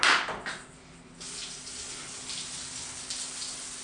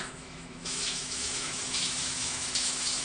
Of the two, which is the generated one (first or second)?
second